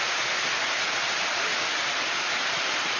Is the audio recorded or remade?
recorded